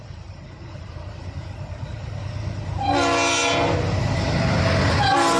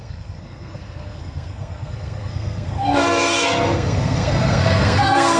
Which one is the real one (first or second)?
first